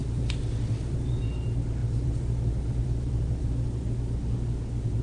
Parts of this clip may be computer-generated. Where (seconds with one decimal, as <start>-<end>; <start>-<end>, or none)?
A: 0.0-1.2; 1.8-3.8

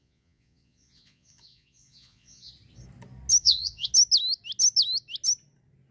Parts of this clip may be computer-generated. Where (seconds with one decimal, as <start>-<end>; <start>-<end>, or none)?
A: 0.0-2.5; 3.4-3.9

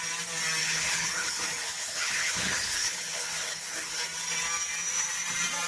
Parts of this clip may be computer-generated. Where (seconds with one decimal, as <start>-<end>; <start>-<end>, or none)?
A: 0.6-4.0